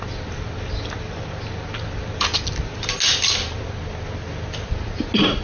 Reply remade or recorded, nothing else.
recorded